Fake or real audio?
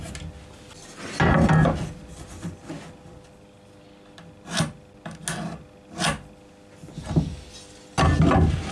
real